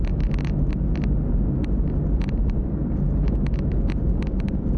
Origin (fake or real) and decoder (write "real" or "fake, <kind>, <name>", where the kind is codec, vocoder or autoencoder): real